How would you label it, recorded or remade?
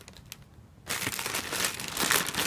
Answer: recorded